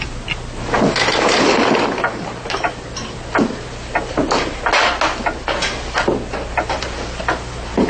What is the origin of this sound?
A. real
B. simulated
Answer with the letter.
A